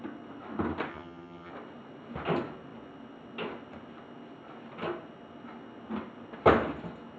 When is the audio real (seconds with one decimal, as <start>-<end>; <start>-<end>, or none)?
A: 0.0-0.9; 1.5-7.2